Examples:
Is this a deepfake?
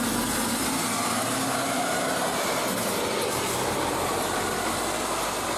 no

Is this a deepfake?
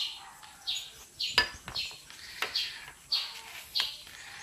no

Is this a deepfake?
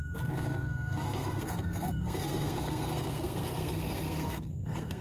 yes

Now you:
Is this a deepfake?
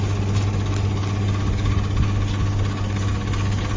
no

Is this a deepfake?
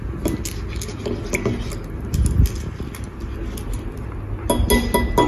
no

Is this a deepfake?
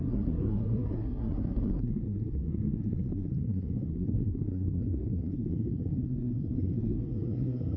yes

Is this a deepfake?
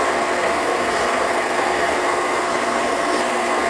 yes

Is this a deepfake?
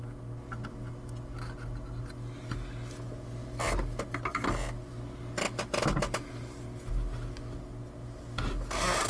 no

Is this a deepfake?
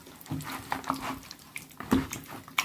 no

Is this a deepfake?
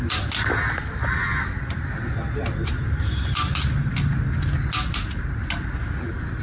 no